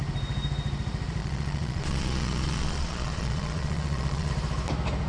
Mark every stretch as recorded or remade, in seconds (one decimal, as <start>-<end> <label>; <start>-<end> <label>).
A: 0.0-1.2 recorded; 1.2-4.3 remade; 4.3-5.1 recorded